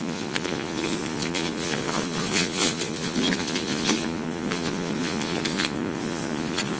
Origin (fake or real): fake